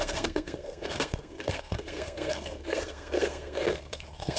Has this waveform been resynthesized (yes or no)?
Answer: yes